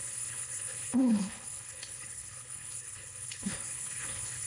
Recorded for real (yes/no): no